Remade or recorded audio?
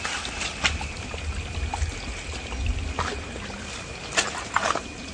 recorded